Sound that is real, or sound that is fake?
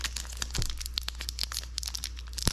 real